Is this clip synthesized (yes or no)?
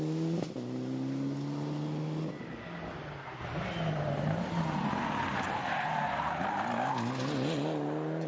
no